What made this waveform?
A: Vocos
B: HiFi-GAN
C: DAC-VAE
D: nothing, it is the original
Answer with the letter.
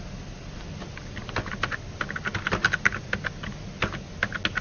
D